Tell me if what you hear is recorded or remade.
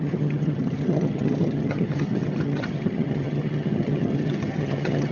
remade